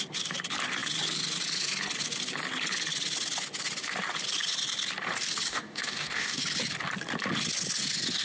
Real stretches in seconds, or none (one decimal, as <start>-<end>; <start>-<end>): 0.0-5.5; 6.4-8.2